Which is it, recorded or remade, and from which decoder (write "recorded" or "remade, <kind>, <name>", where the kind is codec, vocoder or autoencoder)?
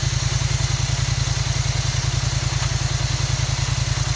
recorded